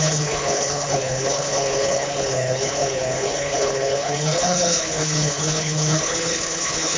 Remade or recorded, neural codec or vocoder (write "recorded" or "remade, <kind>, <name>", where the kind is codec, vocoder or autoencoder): remade, codec, HILCodec